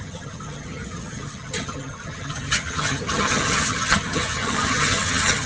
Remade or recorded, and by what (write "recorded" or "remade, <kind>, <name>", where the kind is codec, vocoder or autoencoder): remade, vocoder, HiFi-GAN